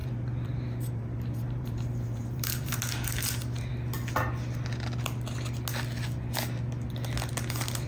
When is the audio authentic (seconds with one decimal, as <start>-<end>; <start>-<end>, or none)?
2.8-7.9